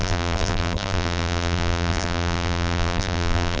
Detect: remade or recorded remade